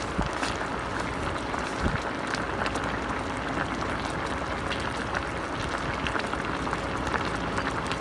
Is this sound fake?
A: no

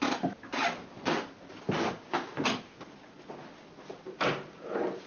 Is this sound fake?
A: no